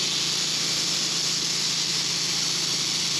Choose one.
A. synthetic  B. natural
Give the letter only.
B